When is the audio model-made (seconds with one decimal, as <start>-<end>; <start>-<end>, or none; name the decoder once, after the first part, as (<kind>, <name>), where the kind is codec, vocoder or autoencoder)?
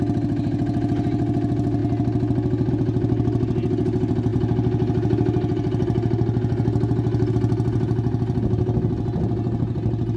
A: none